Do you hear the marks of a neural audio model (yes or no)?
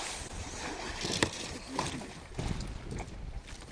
no